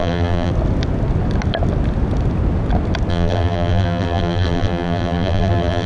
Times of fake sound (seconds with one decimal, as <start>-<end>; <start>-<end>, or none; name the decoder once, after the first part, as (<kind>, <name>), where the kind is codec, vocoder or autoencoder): 0.0-0.5 (vocoder, BigVGAN v2); 3.1-5.9